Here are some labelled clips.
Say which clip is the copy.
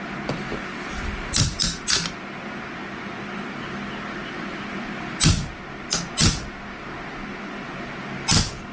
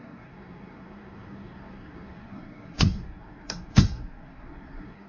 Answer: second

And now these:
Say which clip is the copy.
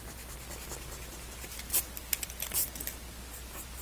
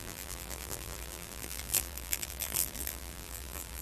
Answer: second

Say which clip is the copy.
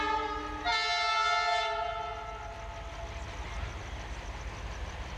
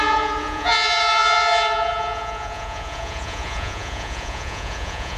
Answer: second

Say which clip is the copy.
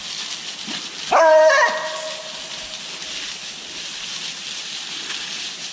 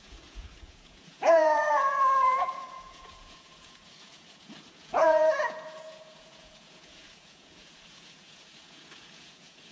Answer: second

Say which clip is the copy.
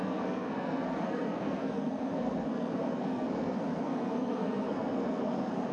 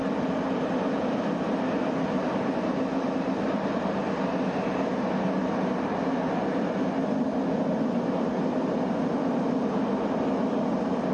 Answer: first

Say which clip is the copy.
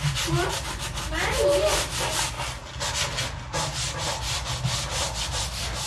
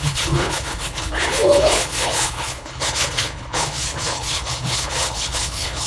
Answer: second